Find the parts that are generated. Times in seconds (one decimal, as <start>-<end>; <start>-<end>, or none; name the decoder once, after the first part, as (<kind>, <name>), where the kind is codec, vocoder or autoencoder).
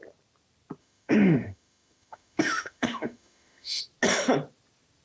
0.8-3.8 (autoencoder, DAC-VAE)